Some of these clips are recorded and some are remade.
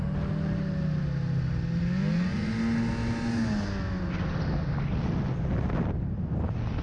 recorded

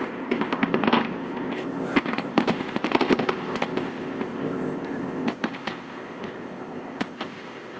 remade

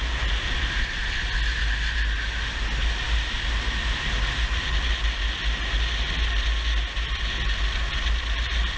recorded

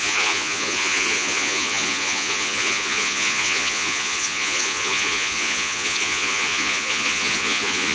remade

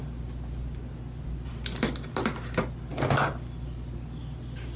recorded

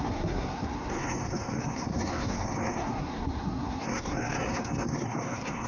remade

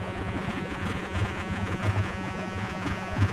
remade